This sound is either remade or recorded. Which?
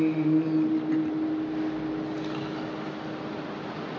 recorded